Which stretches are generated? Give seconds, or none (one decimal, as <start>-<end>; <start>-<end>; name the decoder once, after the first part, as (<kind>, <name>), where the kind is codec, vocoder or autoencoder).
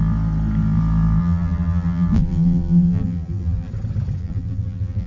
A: 1.2-3.7 (vocoder, BigVGAN v2); 4.2-5.1